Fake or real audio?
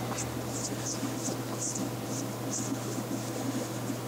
fake